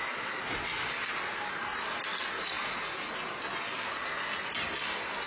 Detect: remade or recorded recorded